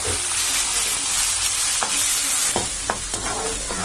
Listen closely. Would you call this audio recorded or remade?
recorded